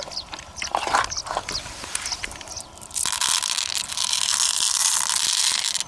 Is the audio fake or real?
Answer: real